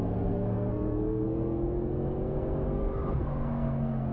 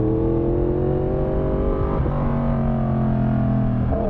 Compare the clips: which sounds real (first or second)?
second